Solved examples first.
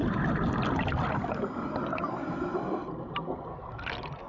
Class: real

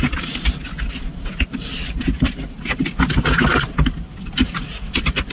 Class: real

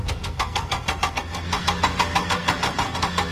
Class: fake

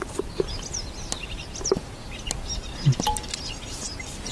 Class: real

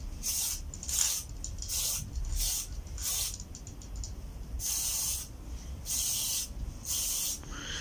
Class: real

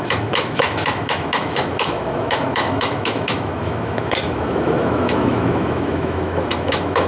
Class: fake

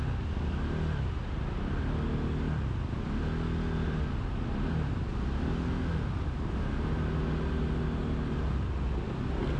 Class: real